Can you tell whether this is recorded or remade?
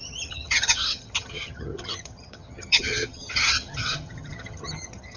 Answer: remade